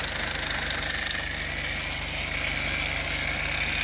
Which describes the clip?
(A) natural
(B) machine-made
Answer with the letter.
A